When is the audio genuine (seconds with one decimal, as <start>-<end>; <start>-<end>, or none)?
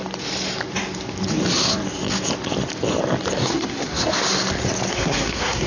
0.0-3.4; 4.1-4.9